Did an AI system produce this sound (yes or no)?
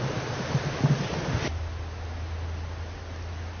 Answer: no